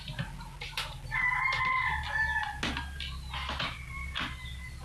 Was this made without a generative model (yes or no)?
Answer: yes